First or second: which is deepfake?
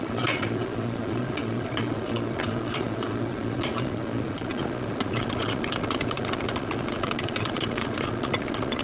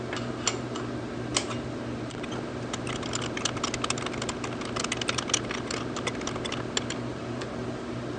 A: first